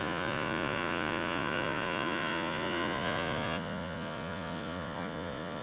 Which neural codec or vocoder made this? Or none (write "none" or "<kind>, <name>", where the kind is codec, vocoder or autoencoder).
vocoder, Vocos